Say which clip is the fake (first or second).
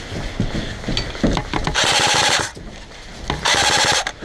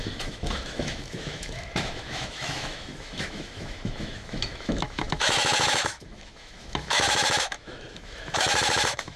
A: second